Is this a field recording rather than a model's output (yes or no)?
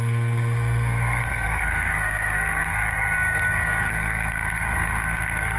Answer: no